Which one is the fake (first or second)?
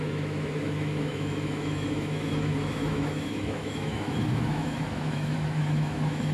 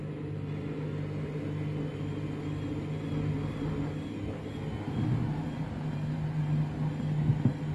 first